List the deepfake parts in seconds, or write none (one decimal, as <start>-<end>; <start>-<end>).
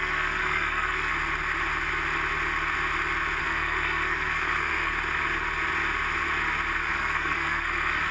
0.0-1.1; 3.4-4.9; 6.8-8.1